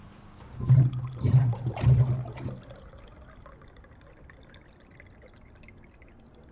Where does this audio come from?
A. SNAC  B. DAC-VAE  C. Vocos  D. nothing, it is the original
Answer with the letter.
D